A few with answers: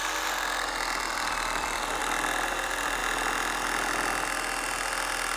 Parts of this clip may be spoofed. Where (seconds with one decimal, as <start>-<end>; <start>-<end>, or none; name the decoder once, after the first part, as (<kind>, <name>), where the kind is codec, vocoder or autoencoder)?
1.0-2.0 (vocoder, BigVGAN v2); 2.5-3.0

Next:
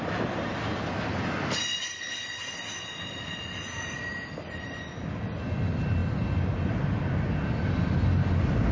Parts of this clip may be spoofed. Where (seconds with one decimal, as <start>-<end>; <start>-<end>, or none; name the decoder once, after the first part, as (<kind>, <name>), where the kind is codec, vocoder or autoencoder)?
1.7-4.7 (vocoder, BigVGAN v2)

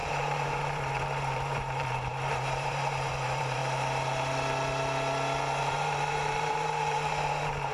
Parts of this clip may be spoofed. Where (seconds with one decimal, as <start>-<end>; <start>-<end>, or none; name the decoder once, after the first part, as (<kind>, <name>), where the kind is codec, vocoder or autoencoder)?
0.0-3.6 (vocoder, BigVGAN v2); 5.6-7.7

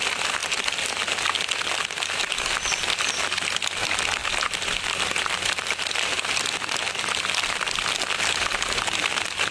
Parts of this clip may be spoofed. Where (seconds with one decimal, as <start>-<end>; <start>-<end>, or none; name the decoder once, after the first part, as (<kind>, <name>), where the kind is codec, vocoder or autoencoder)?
0.4-1.0 (vocoder, BigVGAN v2)